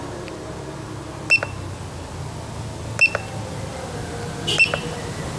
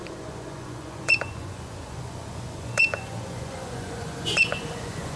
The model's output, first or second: second